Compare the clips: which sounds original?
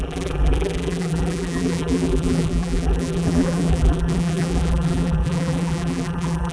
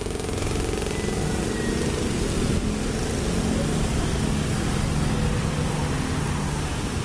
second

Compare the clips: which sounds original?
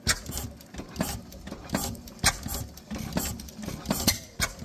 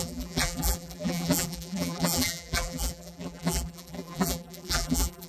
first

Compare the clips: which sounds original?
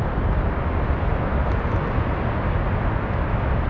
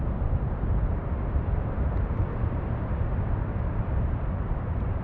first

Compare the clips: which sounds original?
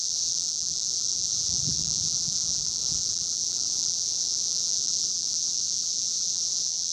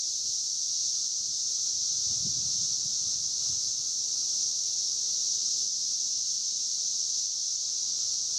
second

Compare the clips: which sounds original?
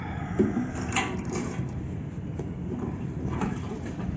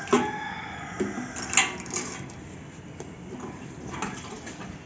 second